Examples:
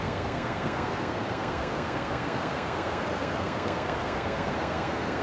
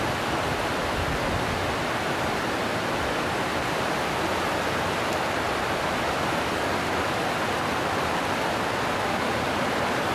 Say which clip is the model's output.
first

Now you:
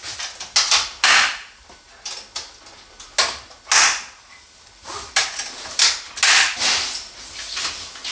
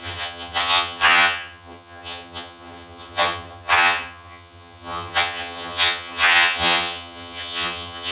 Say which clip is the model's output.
second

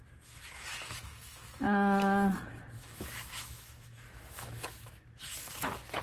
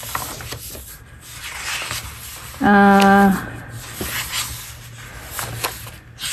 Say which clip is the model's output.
first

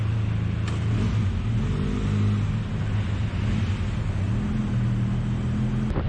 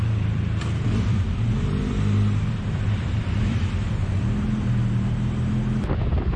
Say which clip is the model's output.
second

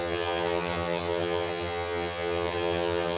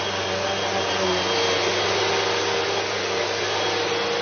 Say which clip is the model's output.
first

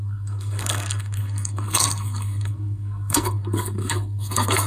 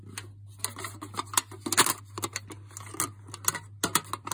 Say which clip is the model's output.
first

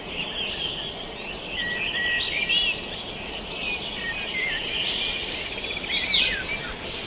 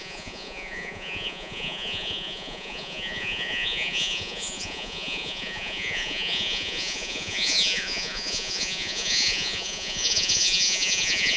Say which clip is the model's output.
second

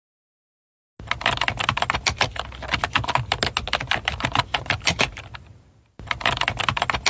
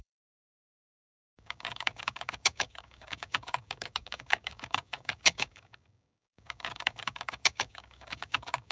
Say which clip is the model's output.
second